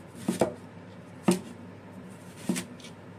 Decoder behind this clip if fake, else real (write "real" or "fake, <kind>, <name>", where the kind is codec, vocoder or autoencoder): fake, vocoder, BigVGAN v2